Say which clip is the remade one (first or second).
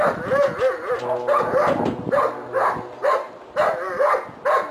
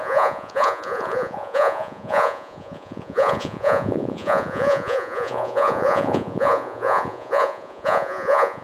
second